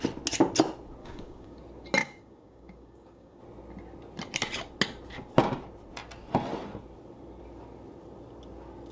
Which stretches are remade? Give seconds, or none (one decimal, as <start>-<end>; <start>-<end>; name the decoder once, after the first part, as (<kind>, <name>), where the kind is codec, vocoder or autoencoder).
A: 1.0-1.6 (codec, DAC); 2.0-3.4